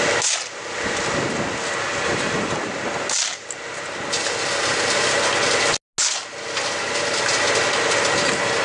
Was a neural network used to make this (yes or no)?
no